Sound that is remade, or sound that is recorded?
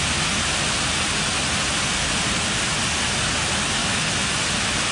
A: recorded